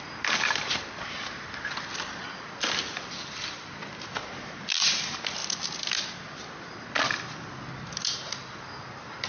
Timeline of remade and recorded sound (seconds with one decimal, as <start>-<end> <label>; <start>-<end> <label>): 0.0-9.3 recorded